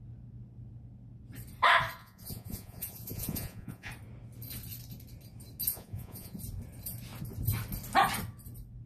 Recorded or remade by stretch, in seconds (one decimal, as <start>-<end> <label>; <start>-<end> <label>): 0.0-2.0 recorded; 2.0-3.9 remade; 3.9-5.7 recorded; 5.7-6.4 remade; 6.4-8.9 recorded